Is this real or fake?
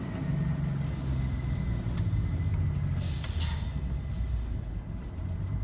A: real